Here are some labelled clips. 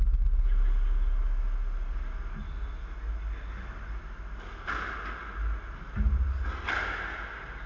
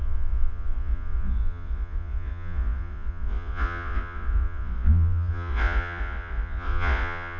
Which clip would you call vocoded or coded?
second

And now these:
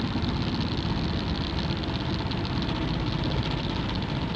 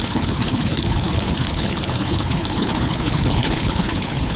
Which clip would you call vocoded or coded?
second